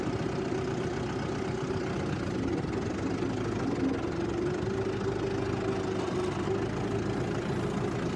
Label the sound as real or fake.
real